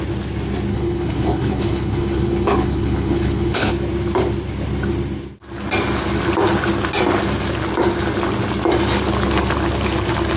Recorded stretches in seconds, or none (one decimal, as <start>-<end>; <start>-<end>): 0.0-0.7; 3.7-10.4